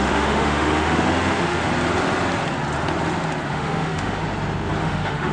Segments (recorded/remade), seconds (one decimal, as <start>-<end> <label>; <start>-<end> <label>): 0.0-1.7 remade; 1.7-3.5 recorded; 3.5-4.2 remade; 4.2-4.8 recorded; 4.8-5.3 remade